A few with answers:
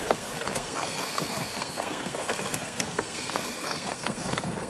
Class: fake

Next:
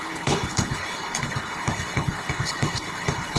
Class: fake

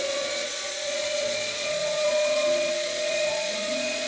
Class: fake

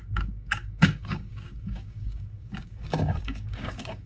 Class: fake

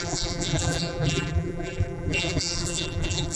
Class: fake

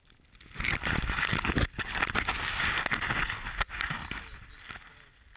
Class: real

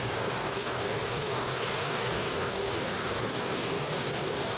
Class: fake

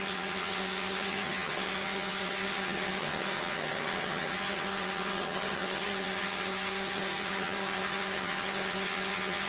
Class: fake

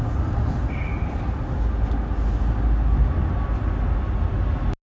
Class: real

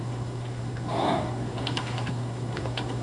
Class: fake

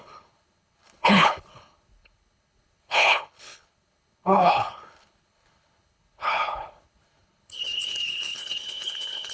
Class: fake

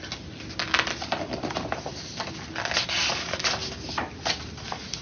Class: real